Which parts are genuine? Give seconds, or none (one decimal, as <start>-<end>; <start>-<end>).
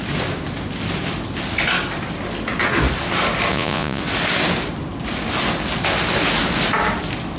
0.0-3.5; 4.0-7.4